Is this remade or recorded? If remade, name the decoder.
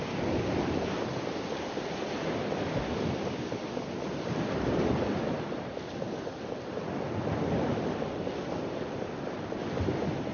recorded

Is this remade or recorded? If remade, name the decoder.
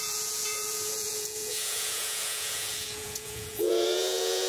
remade, vocoder, Vocos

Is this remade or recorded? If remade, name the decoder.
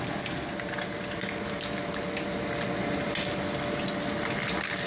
recorded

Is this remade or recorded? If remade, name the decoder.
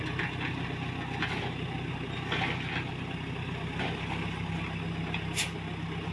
recorded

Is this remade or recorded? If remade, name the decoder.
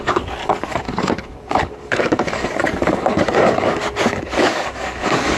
remade, codec, DAC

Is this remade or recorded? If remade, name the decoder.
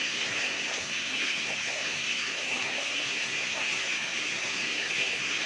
remade, codec, SNAC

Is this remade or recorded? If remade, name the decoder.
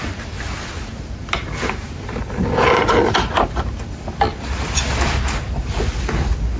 recorded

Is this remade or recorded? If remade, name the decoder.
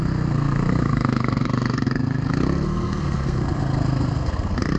remade, codec, SNAC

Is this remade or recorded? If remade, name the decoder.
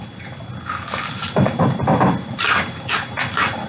recorded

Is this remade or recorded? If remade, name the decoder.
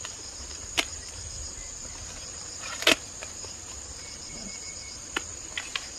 remade, vocoder, BigVGAN v2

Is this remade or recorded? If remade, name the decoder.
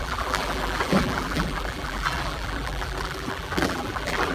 remade, vocoder, BigVGAN v2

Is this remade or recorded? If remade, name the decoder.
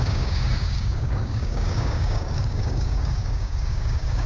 remade, codec, DAC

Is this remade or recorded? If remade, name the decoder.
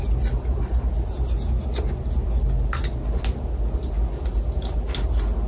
recorded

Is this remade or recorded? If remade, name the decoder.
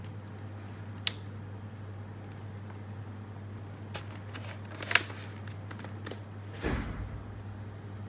recorded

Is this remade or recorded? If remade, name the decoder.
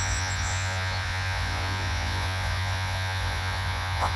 remade, vocoder, Vocos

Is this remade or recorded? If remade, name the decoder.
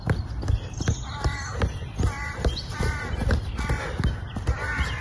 recorded